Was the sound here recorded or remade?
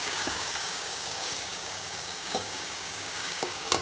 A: remade